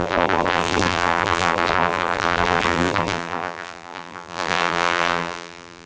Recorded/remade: remade